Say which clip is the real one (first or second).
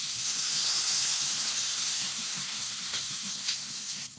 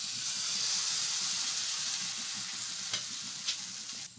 second